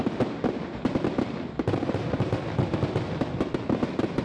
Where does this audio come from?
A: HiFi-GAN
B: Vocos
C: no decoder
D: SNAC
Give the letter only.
C